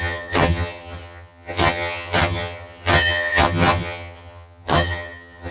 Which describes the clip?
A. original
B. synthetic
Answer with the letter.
B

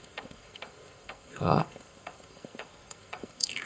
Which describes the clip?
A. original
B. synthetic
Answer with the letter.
B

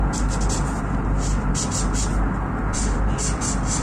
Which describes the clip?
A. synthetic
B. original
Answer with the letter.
B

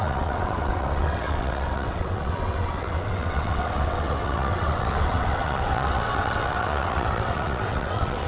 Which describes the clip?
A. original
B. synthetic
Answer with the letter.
B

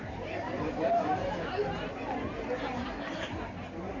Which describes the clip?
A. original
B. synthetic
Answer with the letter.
B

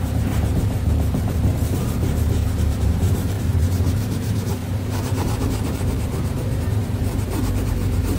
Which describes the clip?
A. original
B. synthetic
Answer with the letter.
B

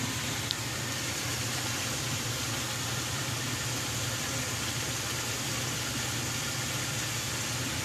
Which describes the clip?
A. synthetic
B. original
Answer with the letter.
A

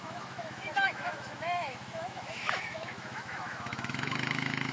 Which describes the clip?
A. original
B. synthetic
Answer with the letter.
B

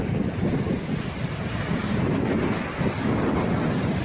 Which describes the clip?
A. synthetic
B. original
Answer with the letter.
B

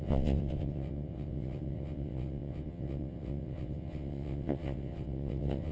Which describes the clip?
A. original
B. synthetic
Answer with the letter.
B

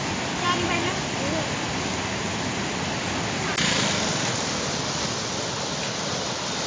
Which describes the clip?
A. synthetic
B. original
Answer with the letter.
B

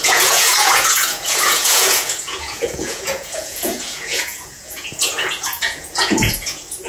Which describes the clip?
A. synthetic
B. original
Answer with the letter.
A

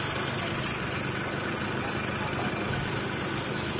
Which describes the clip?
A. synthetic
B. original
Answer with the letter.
B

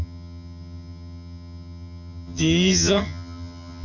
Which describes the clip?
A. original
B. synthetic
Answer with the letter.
B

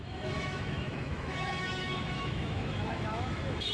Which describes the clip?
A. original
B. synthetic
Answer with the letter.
B